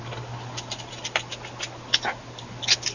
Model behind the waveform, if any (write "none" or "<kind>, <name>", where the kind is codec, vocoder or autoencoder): none